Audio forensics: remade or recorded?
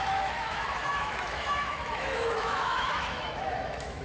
remade